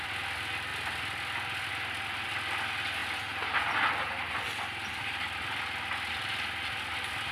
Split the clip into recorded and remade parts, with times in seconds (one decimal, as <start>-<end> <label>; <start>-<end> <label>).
0.0-7.3 recorded